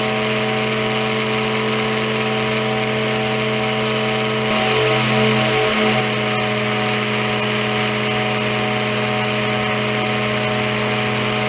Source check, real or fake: real